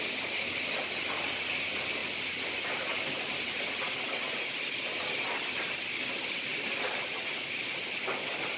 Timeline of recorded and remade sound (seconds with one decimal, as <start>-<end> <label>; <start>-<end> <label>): 0.0-8.6 recorded